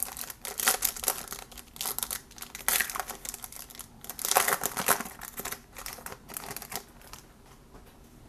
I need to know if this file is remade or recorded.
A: recorded